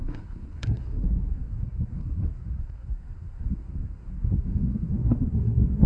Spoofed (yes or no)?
yes